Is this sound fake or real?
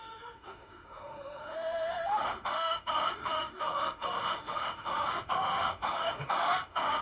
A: fake